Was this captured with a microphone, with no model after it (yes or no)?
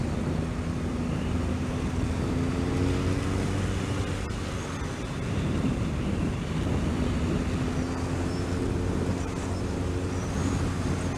yes